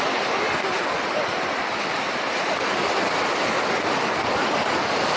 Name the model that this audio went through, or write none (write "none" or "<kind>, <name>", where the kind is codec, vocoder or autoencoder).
none